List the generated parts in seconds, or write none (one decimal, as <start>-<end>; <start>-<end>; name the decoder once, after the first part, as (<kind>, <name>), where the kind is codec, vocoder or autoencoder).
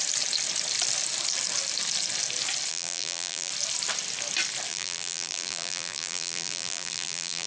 2.7-3.5 (vocoder, BigVGAN v2); 4.7-7.5